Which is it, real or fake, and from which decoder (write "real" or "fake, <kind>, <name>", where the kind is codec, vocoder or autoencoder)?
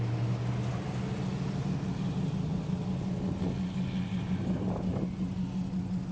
real